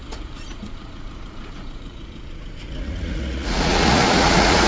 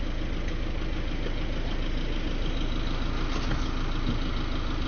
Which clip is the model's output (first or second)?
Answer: first